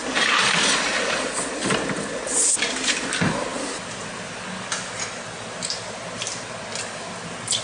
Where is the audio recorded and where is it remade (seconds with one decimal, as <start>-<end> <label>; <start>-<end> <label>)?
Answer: 0.0-7.6 recorded